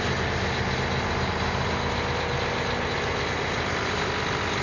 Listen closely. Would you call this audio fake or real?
real